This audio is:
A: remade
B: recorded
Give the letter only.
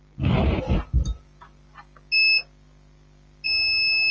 B